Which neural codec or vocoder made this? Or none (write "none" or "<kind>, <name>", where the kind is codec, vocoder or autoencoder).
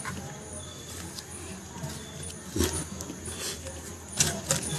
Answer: none